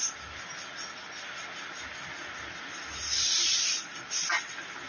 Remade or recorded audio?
recorded